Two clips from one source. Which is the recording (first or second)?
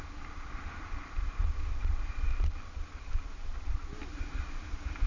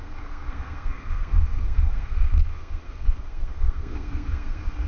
first